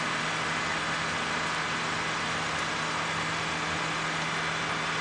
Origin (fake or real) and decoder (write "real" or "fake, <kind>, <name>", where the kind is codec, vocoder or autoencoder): real